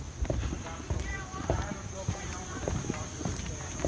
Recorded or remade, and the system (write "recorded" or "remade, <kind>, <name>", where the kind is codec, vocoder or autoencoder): remade, vocoder, BigVGAN v2